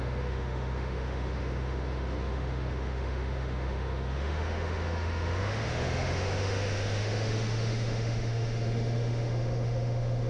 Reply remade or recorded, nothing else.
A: remade